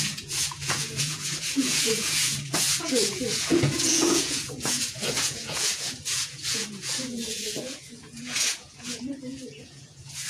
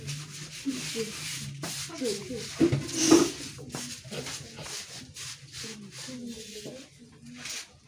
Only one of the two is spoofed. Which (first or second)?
first